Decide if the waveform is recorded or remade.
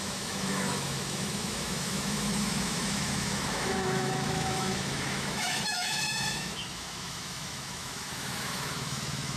remade